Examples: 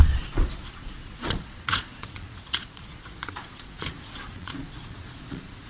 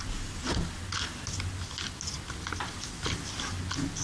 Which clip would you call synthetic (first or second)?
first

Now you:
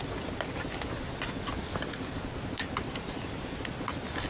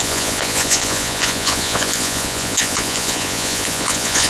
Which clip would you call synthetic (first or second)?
second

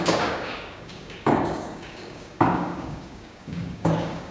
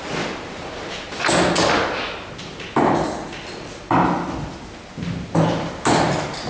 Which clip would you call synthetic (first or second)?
first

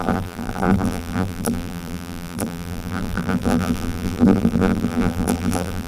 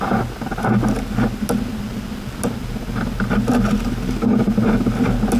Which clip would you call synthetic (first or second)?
first